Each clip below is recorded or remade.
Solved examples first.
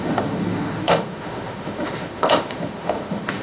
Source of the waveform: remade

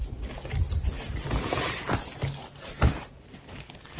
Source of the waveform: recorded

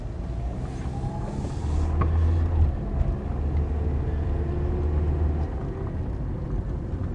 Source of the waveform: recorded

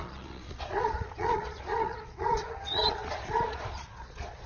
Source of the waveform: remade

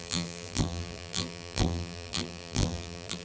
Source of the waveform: remade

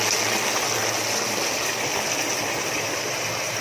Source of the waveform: recorded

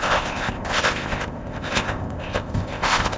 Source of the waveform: remade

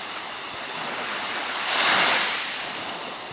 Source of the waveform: recorded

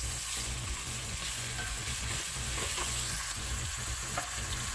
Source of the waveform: remade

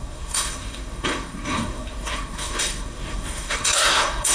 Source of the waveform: remade